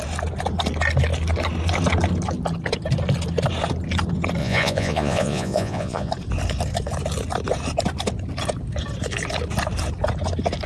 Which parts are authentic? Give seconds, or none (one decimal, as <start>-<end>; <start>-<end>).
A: 0.0-4.4; 6.1-10.7